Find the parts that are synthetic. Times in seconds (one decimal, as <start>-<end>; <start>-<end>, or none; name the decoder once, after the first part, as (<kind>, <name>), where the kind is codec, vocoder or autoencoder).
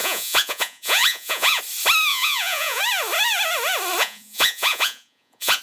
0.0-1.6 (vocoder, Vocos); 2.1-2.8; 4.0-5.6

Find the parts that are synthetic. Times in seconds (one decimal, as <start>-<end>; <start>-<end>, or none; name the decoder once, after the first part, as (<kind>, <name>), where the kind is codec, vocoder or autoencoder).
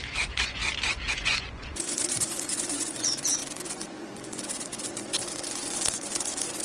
0.0-0.6 (vocoder, Vocos); 1.1-6.6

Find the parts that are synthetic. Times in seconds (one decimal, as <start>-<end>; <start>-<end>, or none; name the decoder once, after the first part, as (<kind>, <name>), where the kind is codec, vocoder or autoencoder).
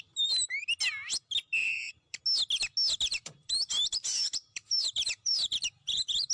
1.6-2.2 (vocoder, BigVGAN v2); 3.1-6.3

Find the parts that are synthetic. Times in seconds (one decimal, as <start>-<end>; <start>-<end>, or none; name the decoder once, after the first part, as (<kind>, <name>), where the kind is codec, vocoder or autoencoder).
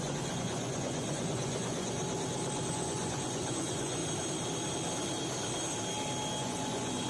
0.0-2.0 (vocoder, Vocos); 2.7-4.0; 6.4-7.1